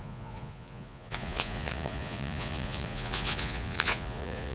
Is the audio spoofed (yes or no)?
yes